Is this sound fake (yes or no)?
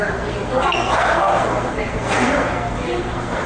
yes